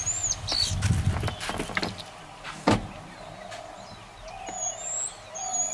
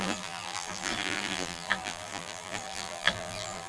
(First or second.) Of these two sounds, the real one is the first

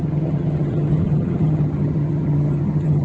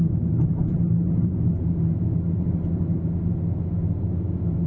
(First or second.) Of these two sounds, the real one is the second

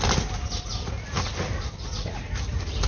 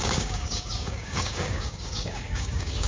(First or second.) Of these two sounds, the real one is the first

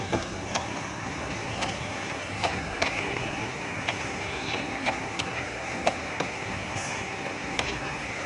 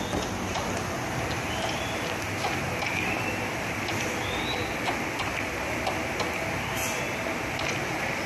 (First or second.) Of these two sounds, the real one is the second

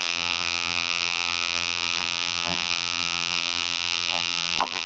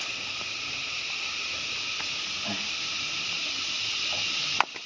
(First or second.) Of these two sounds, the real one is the second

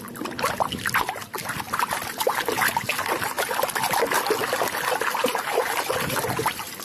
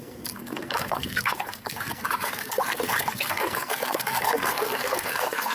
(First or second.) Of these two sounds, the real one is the first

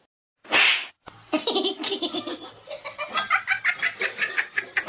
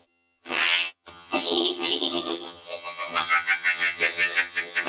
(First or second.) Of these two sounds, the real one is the first